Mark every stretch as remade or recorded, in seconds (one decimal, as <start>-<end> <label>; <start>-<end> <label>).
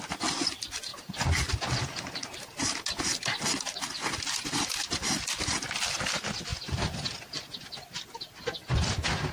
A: 0.0-9.3 recorded